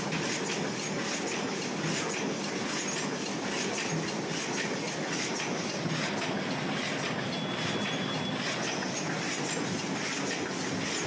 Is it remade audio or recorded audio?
recorded